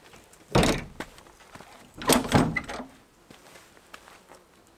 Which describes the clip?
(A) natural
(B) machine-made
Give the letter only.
A